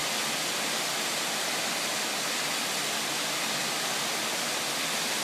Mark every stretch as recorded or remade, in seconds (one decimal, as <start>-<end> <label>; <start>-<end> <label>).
0.0-5.2 recorded